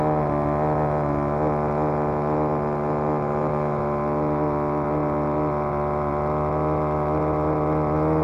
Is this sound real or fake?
real